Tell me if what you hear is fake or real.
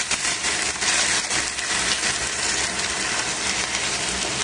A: fake